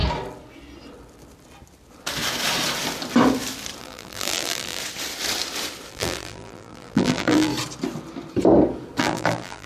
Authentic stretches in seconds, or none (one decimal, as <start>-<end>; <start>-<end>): 0.0-3.8; 4.8-5.9; 7.5-9.0